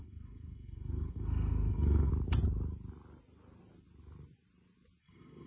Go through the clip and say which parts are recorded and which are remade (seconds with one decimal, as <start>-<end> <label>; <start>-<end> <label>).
0.0-2.1 remade; 2.1-5.0 recorded; 5.0-5.5 remade

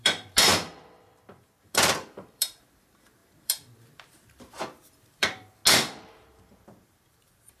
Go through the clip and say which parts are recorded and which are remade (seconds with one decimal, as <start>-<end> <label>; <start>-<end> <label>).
0.0-5.6 remade; 5.6-6.1 recorded; 6.1-7.6 remade

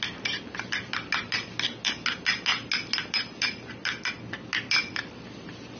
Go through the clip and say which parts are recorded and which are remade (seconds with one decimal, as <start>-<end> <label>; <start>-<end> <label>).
0.0-5.8 recorded